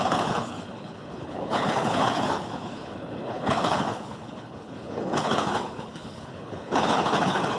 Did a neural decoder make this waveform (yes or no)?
yes